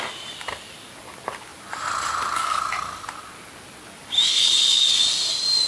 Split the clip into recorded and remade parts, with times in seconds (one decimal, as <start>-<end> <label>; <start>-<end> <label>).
0.0-4.3 recorded; 4.3-4.9 remade; 4.9-5.7 recorded